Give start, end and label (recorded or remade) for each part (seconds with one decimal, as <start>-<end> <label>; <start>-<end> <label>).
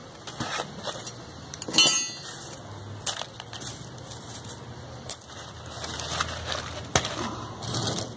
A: 0.0-8.2 recorded